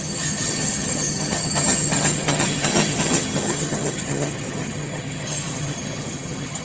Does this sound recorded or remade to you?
remade